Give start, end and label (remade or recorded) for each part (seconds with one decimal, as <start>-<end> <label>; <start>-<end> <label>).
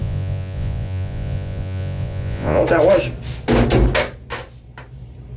0.0-2.6 remade; 2.6-5.4 recorded